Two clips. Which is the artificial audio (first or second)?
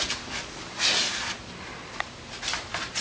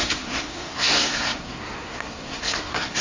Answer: second